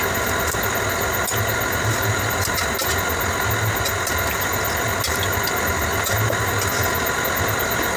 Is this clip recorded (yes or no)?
yes